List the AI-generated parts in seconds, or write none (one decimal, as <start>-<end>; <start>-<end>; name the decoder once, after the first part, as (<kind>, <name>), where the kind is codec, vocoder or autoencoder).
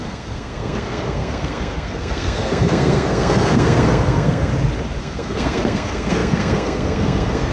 0.0-4.5 (codec, SNAC); 5.0-7.5